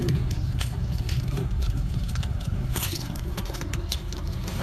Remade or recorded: remade